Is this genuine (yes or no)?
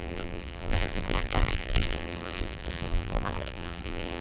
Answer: no